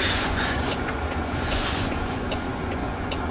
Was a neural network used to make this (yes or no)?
yes